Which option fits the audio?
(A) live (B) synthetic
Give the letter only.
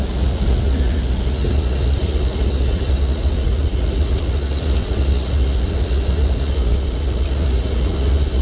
B